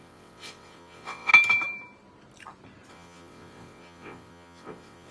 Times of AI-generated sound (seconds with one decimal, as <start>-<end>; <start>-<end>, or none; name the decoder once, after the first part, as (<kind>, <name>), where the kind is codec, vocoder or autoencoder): 0.0-1.3 (vocoder, WaveNeXt); 2.9-5.1